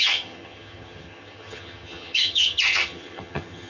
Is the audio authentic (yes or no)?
no